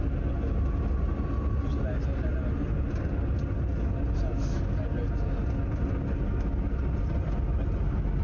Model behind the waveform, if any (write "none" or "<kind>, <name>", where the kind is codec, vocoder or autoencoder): none